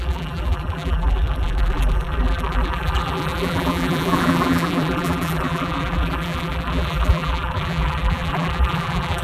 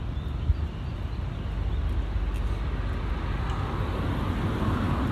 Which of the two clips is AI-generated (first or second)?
first